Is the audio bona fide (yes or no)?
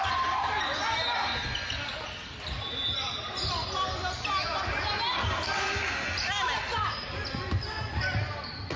yes